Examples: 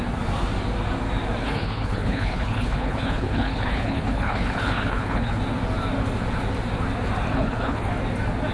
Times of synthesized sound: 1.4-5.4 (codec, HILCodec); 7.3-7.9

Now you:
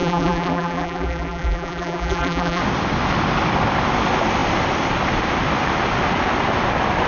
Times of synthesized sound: 0.0-2.6 (vocoder, BigVGAN v2)

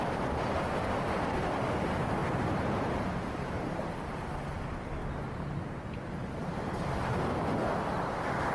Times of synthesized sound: none